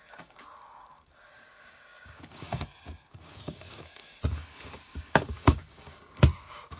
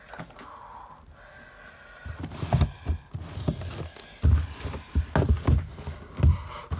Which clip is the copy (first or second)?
first